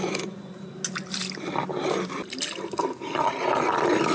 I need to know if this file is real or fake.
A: real